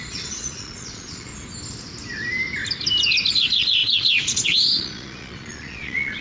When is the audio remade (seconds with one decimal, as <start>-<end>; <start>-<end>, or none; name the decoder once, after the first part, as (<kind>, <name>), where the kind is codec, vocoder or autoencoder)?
0.0-1.3 (vocoder, Vocos); 3.3-6.2